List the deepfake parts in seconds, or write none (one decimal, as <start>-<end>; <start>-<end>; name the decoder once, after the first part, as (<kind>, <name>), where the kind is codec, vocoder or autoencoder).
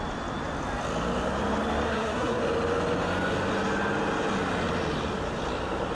1.9-2.4 (codec, SNAC)